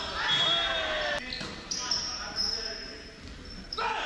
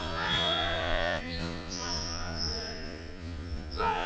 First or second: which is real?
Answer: first